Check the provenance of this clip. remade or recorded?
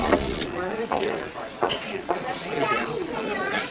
remade